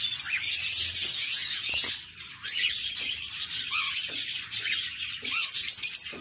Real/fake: real